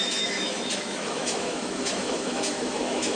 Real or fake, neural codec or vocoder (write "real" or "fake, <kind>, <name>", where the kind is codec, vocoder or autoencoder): fake, autoencoder, DAC-VAE